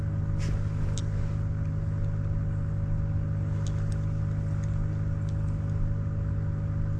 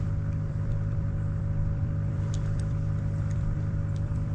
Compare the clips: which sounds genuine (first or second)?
first